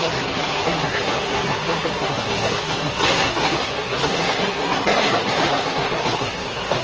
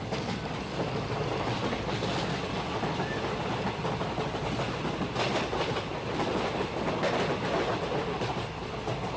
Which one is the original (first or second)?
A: second